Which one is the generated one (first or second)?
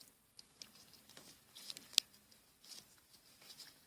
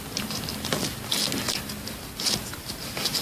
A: first